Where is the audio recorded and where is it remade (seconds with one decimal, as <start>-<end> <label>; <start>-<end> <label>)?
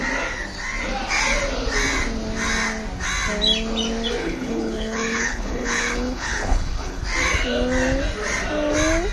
0.0-4.2 recorded; 4.2-7.0 remade; 7.0-9.1 recorded